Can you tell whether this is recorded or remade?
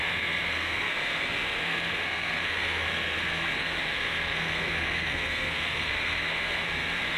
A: remade